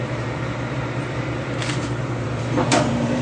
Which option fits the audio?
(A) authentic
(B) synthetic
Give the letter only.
B